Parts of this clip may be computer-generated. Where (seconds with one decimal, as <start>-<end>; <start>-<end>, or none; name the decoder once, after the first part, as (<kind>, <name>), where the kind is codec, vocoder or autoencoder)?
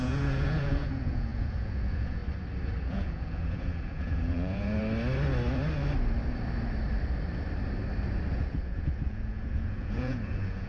0.0-2.2 (vocoder, Vocos); 2.8-4.8; 8.3-10.7